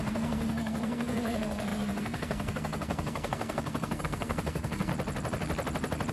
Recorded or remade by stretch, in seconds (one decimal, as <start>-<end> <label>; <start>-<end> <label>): 0.0-4.9 remade; 4.9-6.1 recorded